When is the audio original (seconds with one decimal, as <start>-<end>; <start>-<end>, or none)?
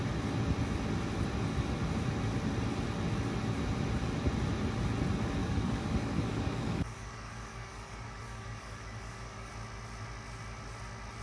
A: 0.0-5.4; 9.5-11.2